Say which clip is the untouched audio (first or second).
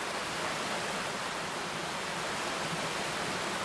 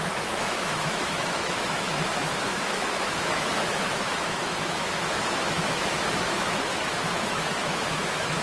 first